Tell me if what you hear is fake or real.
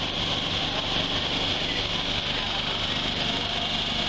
real